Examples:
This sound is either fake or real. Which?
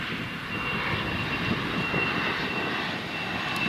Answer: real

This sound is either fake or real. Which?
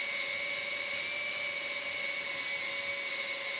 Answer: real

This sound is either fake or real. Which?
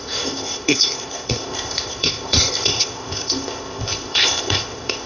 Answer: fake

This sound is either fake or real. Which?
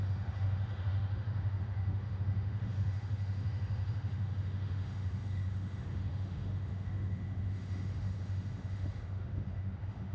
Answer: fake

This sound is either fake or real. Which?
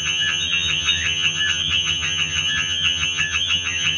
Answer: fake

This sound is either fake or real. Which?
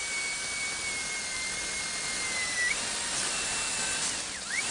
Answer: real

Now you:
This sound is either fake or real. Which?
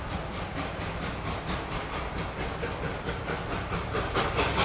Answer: real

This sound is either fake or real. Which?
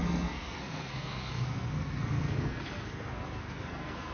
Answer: fake